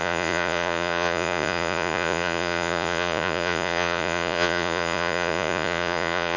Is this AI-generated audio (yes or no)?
yes